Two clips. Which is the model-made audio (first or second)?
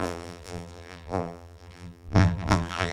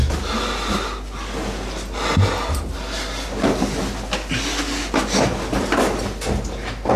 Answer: first